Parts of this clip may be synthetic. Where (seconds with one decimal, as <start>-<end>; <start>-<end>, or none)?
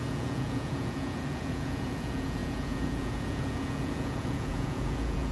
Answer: 0.0-5.3